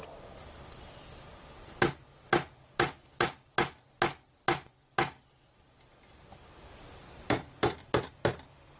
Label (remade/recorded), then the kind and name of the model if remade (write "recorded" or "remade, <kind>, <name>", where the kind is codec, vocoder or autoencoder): recorded